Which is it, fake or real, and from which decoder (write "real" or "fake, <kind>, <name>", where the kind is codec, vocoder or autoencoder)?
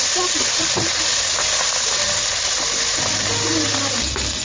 real